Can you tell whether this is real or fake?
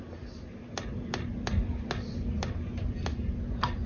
real